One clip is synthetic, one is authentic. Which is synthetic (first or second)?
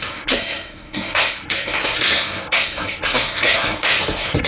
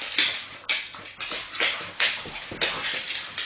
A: first